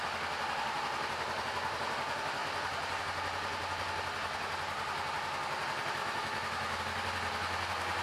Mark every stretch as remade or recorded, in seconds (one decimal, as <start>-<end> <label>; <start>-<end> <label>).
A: 0.0-6.0 recorded; 6.0-6.8 remade; 6.8-8.0 recorded